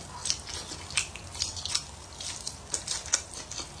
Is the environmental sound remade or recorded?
recorded